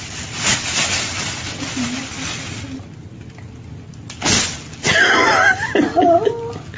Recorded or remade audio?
recorded